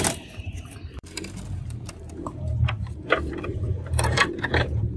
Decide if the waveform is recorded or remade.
remade